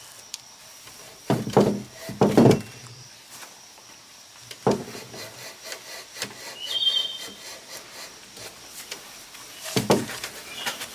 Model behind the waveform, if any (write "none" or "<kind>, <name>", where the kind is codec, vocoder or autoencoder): none